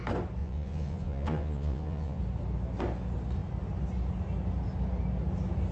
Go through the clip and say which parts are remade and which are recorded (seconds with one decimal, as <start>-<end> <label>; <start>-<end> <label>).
0.0-0.4 recorded; 0.4-2.2 remade; 2.2-5.7 recorded